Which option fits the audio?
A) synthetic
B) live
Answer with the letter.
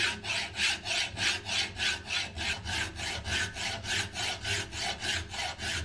B